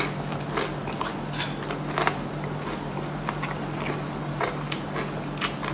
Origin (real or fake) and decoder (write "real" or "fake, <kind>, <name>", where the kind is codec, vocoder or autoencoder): real